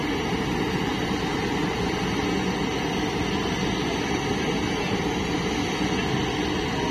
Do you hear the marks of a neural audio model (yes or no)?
no